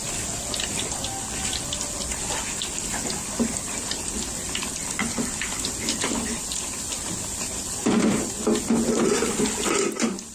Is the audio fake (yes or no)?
no